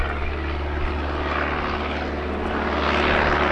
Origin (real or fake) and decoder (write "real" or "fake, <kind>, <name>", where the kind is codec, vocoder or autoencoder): real